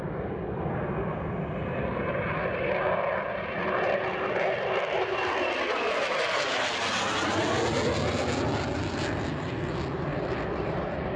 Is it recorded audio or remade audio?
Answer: recorded